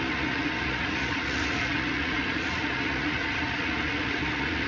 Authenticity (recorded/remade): remade